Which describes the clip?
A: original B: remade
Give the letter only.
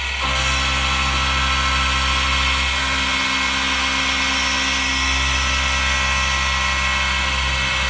A